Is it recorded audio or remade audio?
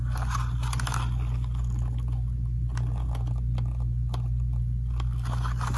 recorded